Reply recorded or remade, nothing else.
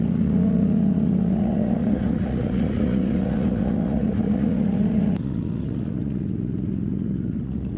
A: remade